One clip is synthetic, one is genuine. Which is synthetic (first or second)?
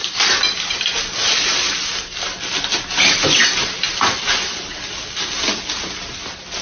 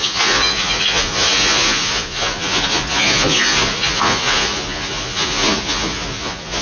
second